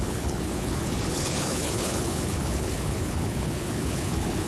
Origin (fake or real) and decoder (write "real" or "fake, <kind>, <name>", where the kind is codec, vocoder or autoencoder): fake, codec, HILCodec